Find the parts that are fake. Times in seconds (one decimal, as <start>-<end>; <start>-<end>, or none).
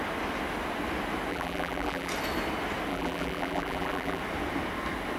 1.3-2.1; 2.9-4.2